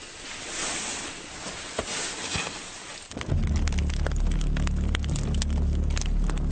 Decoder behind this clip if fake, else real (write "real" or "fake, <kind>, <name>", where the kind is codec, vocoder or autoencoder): real